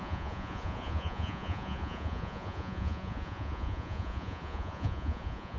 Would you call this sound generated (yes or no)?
yes